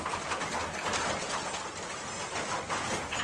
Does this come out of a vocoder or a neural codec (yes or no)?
no